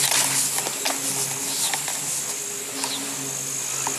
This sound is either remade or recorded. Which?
recorded